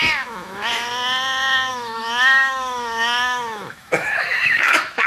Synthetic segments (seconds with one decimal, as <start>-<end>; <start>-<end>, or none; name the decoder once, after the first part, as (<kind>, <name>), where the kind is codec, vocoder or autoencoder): 0.0-0.7 (autoencoder, DAC-VAE); 1.7-5.1